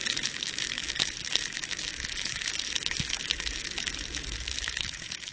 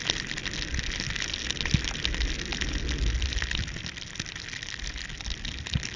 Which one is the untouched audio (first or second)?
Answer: second